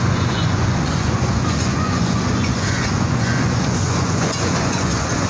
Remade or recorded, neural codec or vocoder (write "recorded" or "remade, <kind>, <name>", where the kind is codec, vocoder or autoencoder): remade, vocoder, Vocos